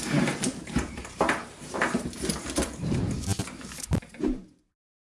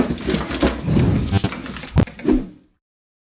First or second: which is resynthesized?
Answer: first